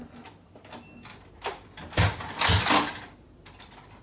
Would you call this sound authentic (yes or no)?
yes